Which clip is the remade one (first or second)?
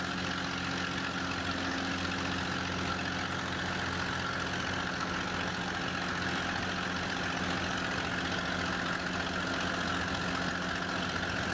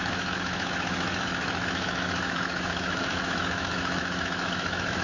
second